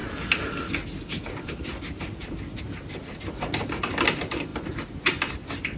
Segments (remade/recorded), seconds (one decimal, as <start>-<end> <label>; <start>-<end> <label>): 0.0-5.8 recorded